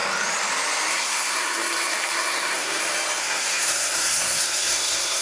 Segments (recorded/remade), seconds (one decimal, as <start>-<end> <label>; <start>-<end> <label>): 0.0-0.9 recorded; 0.9-2.8 remade; 2.8-3.2 recorded; 3.2-5.2 remade